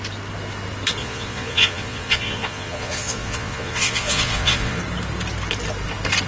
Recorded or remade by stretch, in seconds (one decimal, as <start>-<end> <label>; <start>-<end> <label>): 0.0-1.0 recorded; 1.0-4.8 remade; 4.8-6.3 recorded